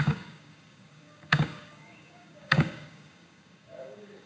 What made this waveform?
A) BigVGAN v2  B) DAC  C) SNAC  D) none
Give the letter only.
B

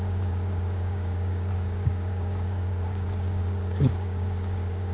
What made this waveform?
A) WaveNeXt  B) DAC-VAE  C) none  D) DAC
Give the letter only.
D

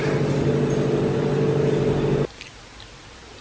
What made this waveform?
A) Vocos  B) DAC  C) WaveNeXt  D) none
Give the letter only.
D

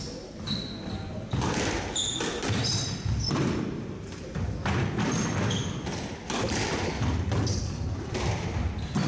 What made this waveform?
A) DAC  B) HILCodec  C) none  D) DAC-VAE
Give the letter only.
C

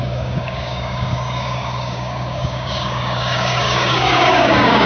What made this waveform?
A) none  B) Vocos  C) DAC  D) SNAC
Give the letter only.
C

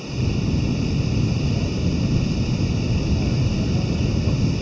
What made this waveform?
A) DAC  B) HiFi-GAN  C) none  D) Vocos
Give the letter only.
C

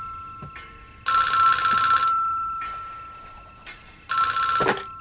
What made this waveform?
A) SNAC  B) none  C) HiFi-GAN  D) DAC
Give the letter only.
B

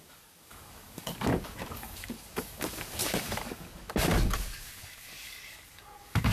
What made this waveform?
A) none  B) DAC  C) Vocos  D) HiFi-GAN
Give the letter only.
B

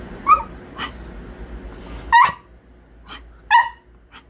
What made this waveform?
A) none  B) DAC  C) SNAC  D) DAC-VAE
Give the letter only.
A